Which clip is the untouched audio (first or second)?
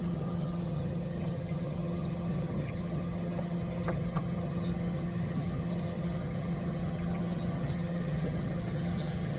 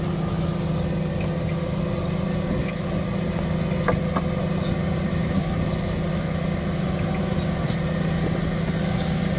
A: second